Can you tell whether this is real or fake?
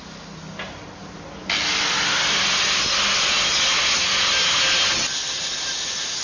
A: real